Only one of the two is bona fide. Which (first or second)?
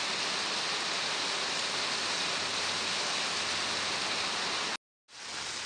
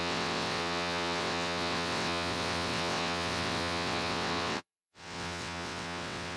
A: first